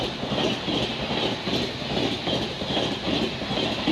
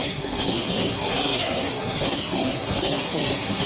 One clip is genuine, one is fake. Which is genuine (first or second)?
first